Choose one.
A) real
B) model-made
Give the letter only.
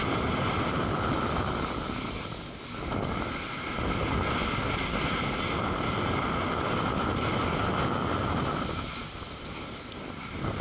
A